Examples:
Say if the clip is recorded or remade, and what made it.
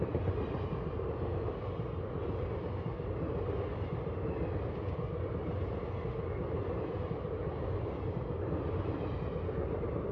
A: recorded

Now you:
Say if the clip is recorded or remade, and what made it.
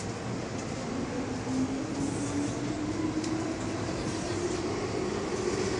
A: recorded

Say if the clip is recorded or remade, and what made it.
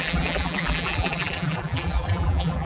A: remade, vocoder, BigVGAN v2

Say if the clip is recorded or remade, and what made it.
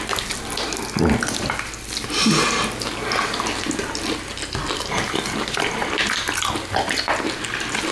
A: recorded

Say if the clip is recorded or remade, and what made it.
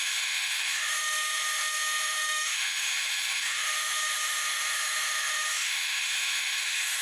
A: remade, autoencoder, DAC-VAE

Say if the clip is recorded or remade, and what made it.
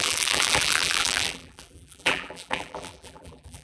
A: remade, vocoder, BigVGAN v2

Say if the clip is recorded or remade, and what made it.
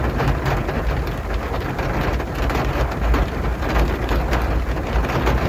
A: recorded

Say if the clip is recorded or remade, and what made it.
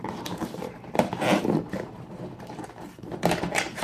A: remade, vocoder, BigVGAN v2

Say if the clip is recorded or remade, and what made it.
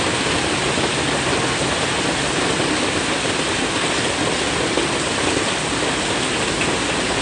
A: recorded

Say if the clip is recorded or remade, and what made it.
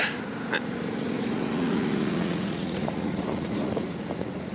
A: remade, vocoder, Vocos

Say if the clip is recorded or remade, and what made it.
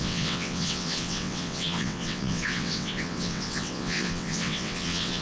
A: remade, vocoder, WaveNeXt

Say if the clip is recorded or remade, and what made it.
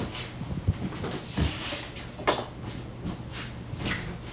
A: recorded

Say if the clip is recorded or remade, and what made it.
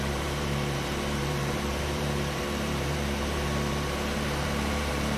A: remade, vocoder, BigVGAN v2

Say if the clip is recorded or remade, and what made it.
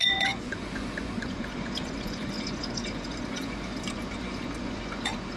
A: remade, vocoder, Vocos